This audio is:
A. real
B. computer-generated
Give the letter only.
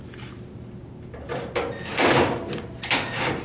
A